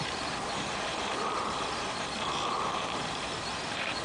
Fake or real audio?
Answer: fake